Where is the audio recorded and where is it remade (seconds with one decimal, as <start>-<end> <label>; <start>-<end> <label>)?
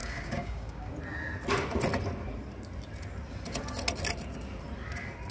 0.0-0.9 remade; 0.9-5.3 recorded